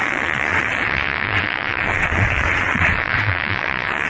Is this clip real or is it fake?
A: fake